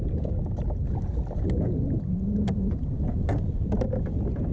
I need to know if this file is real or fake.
real